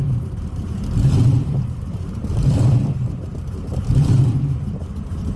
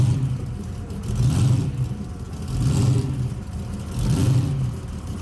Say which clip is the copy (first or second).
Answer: first